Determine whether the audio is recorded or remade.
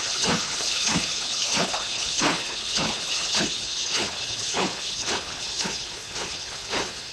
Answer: remade